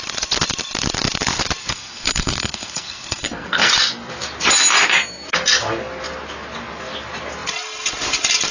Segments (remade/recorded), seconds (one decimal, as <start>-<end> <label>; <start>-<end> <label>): 0.0-1.6 recorded; 1.6-3.7 remade; 3.7-8.5 recorded